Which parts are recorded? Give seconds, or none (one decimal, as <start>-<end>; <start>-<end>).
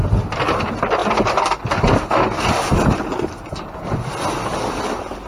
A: 0.0-5.3